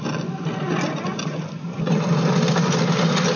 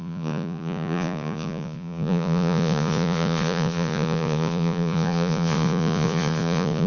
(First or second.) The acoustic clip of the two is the first